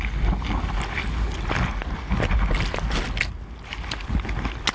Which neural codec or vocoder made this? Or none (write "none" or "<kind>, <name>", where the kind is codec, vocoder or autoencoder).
none